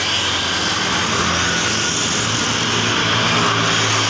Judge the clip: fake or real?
real